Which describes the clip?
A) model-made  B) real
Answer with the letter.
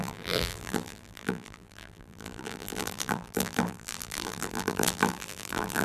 A